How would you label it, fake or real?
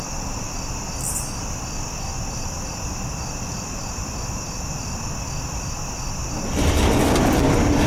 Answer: real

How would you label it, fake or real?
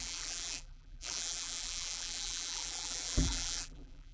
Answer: fake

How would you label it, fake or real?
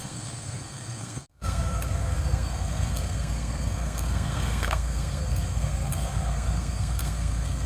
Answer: fake